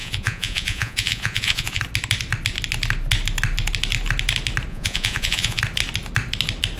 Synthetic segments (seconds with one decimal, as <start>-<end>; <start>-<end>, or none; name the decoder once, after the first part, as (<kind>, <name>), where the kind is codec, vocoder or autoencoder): 0.0-1.8 (vocoder, Vocos); 4.7-5.6